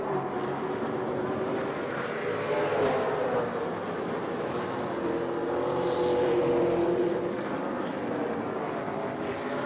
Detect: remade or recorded recorded